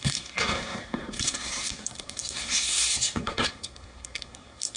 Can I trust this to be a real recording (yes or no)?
no